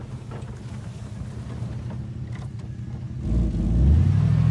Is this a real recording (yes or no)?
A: yes